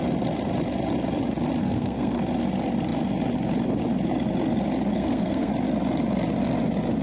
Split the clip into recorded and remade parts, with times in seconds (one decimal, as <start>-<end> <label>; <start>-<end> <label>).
0.0-1.6 recorded; 1.6-2.2 remade; 2.2-4.9 recorded; 4.9-5.5 remade; 5.5-7.0 recorded